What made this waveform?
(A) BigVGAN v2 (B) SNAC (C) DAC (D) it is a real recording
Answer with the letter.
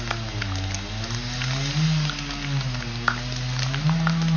D